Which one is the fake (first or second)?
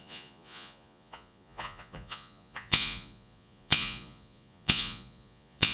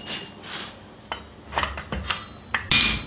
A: first